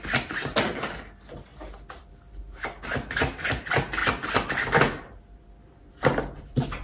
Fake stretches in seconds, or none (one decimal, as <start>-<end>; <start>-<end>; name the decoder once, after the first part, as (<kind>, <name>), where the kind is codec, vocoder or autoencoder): none